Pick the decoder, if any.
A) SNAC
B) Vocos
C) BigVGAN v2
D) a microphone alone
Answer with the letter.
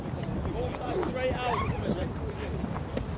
D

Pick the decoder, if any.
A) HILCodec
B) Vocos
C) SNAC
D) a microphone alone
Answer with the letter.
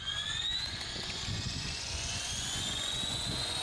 B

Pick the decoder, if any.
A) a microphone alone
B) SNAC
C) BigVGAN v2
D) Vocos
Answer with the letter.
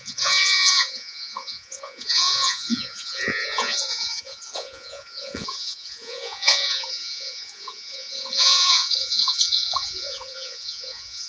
D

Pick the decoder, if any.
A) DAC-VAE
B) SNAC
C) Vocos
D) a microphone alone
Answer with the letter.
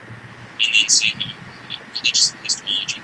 D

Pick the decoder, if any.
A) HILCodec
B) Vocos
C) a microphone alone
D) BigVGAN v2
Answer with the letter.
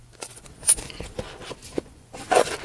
B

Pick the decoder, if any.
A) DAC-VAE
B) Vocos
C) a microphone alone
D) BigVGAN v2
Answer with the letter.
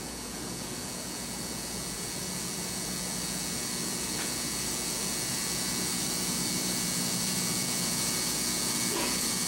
B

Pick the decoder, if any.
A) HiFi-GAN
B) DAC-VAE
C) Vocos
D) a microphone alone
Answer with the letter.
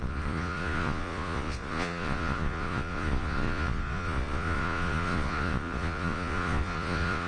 C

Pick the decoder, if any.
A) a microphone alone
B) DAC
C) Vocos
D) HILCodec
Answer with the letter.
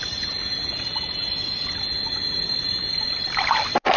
A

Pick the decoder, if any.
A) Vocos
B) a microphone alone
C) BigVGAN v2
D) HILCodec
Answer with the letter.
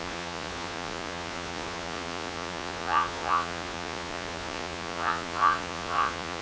A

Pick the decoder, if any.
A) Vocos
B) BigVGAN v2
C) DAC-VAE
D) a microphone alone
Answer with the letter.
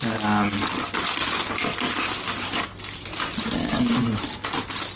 D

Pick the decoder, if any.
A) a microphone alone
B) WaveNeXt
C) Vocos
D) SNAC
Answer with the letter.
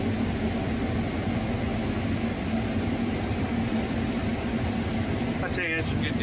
A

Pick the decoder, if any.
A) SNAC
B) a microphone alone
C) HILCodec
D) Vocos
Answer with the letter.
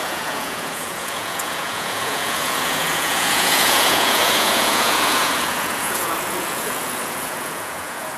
D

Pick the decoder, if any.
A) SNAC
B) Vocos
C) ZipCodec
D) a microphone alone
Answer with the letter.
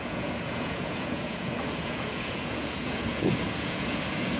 B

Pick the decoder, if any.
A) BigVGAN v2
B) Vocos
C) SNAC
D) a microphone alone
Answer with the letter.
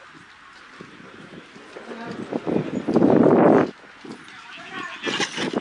D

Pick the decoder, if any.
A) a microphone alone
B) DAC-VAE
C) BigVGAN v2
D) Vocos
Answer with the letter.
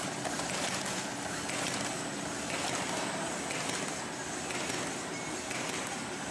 A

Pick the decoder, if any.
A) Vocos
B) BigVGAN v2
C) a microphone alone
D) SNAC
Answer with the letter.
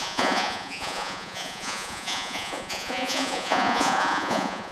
A